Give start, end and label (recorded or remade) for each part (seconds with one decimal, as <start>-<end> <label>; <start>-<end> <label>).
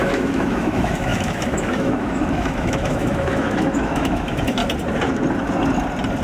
0.0-4.6 remade; 4.6-6.2 recorded